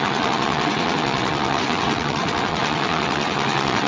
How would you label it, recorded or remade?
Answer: remade